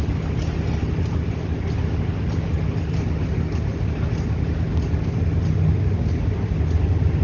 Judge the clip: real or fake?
real